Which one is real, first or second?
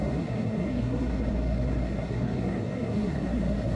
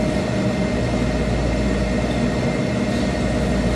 second